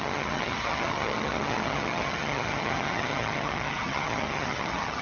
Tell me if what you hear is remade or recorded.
remade